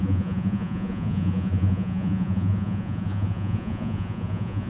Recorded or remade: remade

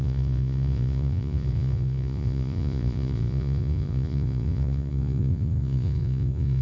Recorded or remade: remade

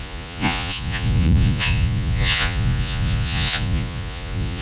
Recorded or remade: remade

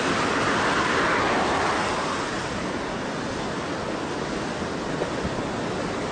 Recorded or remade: recorded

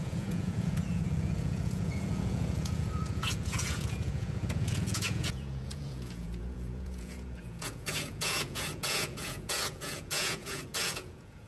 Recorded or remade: remade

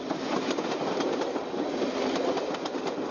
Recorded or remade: recorded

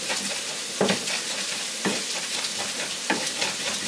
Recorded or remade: recorded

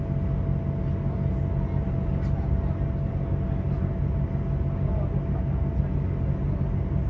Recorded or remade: recorded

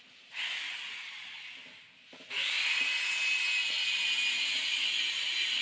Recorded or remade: recorded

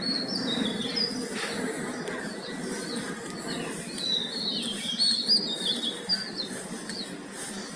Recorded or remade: recorded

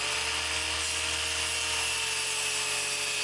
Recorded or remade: recorded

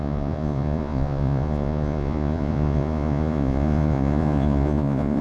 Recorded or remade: remade